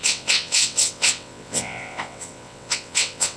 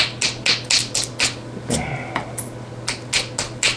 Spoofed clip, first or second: first